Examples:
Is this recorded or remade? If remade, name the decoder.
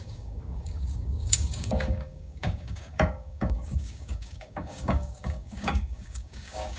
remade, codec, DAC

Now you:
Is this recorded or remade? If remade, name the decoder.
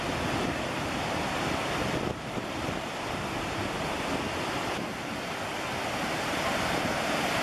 recorded